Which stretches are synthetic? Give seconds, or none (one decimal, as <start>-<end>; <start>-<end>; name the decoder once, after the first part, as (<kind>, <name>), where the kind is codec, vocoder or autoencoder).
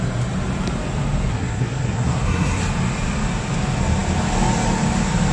1.3-2.6 (codec, SNAC)